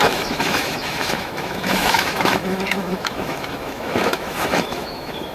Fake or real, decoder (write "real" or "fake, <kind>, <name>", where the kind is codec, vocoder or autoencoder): fake, autoencoder, DAC-VAE